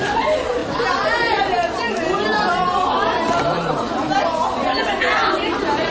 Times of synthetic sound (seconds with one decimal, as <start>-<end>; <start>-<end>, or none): none